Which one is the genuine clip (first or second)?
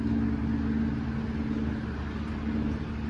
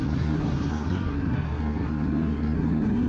first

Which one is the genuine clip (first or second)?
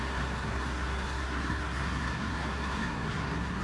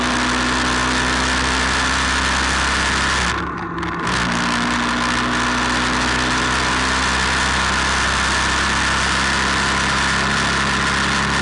second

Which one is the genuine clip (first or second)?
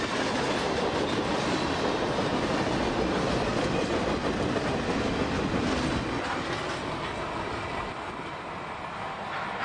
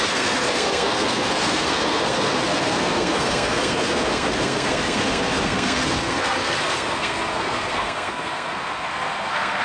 first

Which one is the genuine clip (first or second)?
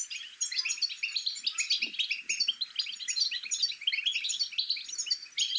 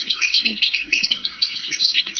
first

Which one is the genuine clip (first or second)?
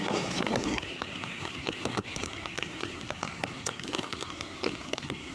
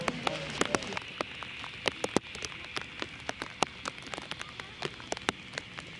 second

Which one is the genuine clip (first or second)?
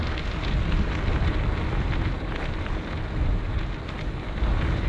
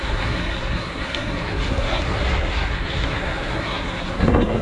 first